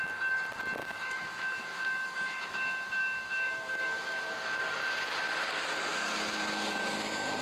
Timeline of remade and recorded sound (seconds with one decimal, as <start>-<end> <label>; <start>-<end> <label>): 0.0-0.8 recorded; 0.8-4.6 remade; 4.6-7.4 recorded